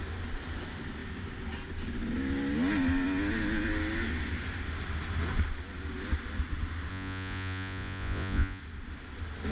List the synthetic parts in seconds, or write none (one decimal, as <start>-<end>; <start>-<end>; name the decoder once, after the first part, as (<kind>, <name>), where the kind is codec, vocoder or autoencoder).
6.9-8.6 (vocoder, Vocos)